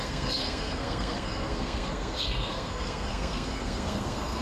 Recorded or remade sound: remade